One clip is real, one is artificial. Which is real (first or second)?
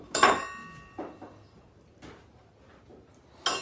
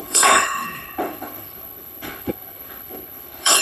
first